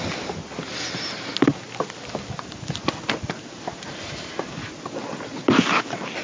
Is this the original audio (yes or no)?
yes